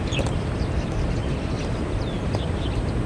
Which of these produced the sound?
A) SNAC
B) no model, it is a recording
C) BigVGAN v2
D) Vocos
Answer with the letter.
B